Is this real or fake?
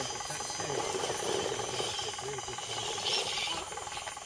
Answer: real